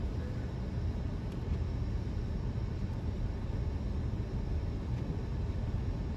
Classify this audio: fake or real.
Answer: real